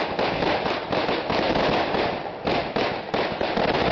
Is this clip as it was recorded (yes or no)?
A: yes